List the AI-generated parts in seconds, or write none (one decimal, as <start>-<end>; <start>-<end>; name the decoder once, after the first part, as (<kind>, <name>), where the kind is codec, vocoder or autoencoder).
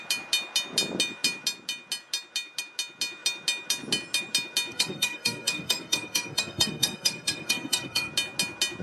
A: 4.7-8.1 (codec, SNAC)